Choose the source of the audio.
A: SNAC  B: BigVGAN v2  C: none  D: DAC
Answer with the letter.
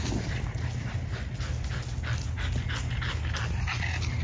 C